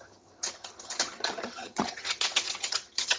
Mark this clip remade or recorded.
remade